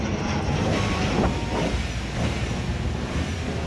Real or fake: real